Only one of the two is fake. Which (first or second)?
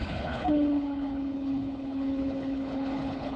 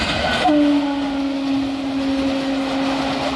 first